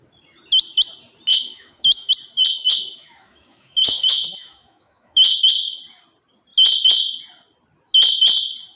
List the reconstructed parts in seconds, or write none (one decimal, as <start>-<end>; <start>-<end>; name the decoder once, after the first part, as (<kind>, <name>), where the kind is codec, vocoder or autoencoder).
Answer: 1.3-2.1 (autoencoder, DAC-VAE); 2.5-5.8